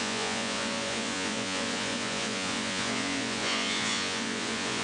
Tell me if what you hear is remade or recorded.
remade